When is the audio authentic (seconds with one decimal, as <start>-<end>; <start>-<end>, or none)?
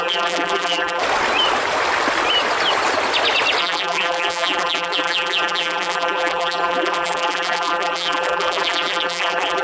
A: 1.0-3.6